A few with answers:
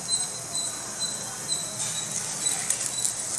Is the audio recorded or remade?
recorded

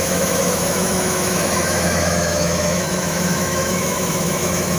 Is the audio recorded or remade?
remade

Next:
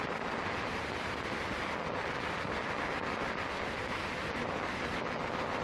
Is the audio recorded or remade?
recorded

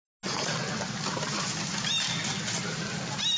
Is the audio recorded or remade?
recorded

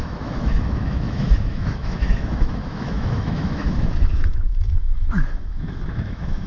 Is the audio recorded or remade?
remade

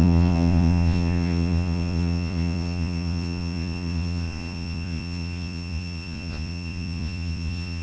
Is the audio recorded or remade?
remade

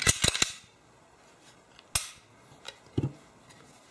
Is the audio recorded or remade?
recorded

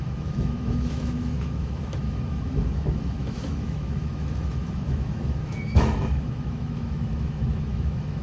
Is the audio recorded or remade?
remade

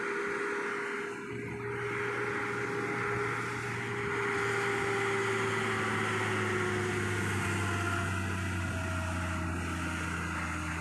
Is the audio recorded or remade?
recorded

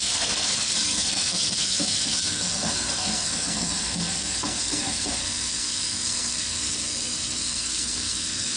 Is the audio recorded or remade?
remade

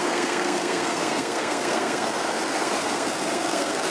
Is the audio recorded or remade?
remade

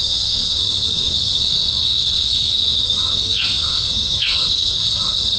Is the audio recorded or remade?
remade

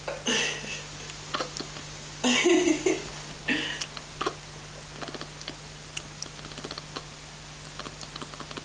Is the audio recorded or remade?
recorded